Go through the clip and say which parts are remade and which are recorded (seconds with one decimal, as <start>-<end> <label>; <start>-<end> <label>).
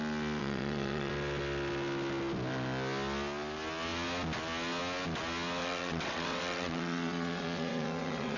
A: 0.0-0.4 recorded; 0.4-1.1 remade; 1.1-5.6 recorded; 5.6-8.4 remade